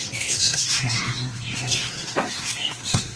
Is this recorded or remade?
remade